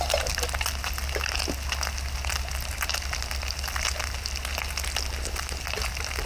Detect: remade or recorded recorded